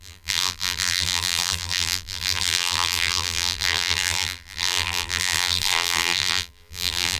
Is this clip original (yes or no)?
no